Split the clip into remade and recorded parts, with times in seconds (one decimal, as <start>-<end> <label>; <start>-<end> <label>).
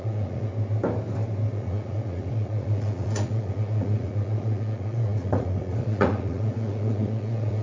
0.0-0.5 remade; 0.5-1.5 recorded; 1.5-7.6 remade